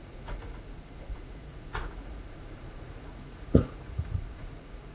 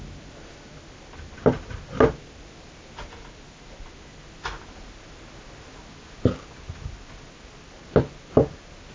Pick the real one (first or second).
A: second